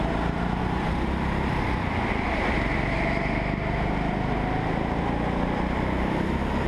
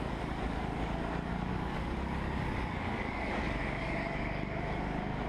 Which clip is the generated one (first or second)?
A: second